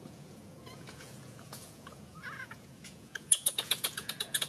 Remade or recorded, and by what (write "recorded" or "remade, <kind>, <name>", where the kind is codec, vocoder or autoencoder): remade, vocoder, Vocos